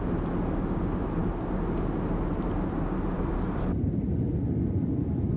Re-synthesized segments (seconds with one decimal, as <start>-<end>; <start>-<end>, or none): none